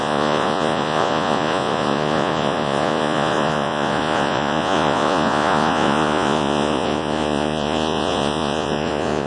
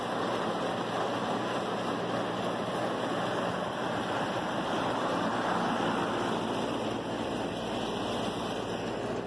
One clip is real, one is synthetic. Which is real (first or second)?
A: second